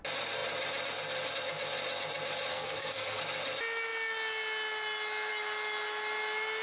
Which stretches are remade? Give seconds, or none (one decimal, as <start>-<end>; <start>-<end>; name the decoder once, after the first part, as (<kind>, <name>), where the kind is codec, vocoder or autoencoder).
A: 2.5-3.2 (codec, SNAC)